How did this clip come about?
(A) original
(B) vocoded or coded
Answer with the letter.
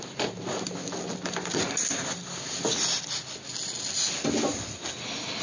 A